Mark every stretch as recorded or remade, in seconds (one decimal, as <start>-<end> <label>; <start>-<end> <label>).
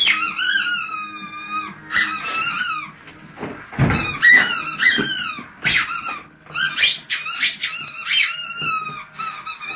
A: 0.0-9.8 recorded